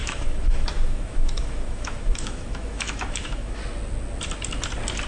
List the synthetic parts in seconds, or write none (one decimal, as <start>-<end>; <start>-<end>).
0.0-3.6